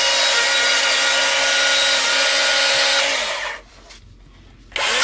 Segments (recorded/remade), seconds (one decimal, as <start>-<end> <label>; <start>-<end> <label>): 0.0-5.0 recorded